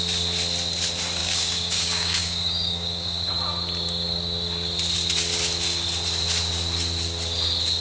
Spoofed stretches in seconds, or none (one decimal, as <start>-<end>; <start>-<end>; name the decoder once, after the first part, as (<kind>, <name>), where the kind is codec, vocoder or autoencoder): 1.2-3.3 (codec, DAC)